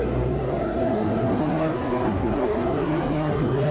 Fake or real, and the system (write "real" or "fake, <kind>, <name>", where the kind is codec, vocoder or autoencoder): fake, codec, SNAC